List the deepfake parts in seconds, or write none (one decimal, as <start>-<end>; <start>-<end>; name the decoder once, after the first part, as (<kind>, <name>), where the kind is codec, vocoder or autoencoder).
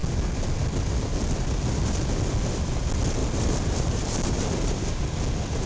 3.2-5.0 (vocoder, BigVGAN v2)